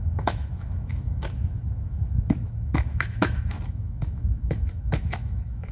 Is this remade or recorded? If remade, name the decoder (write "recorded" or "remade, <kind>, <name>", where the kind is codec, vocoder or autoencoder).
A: remade, autoencoder, DAC-VAE